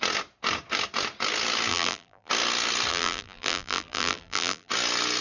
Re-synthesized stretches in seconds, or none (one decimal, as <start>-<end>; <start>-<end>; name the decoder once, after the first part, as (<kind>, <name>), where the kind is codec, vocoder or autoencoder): 1.7-2.3 (vocoder, BigVGAN v2); 2.9-4.7